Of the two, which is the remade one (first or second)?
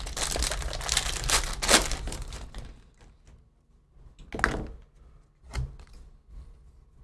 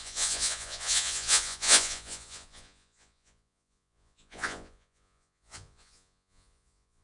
second